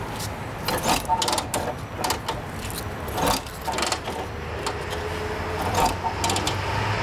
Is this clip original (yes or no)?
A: yes